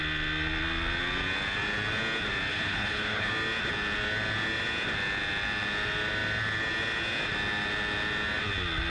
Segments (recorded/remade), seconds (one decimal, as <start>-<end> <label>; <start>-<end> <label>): 0.0-2.5 recorded; 2.5-3.3 remade; 3.3-8.9 recorded